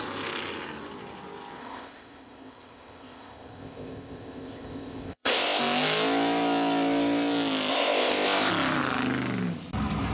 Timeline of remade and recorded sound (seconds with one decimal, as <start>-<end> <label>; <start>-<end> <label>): 0.0-1.6 recorded; 1.6-5.6 remade; 5.6-7.7 recorded; 7.7-8.5 remade; 8.5-10.1 recorded